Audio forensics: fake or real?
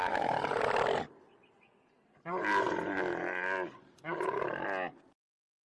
real